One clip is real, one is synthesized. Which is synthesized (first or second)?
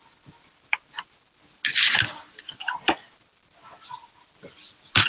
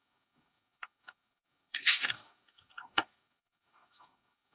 second